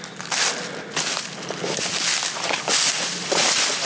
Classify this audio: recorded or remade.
recorded